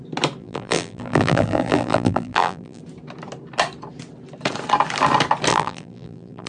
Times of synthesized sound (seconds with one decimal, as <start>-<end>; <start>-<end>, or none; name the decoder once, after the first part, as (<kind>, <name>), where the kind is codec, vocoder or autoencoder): 0.4-2.8 (vocoder, BigVGAN v2); 5.5-6.5